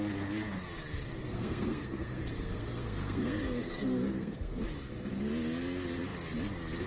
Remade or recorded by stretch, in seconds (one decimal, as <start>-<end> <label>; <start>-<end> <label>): 0.0-1.3 recorded; 1.3-4.6 remade; 4.6-6.9 recorded